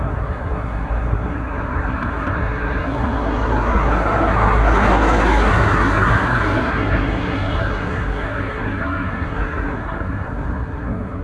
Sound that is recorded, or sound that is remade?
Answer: remade